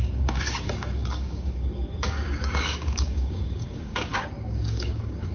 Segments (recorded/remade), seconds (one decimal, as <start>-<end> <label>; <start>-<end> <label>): 0.0-5.3 remade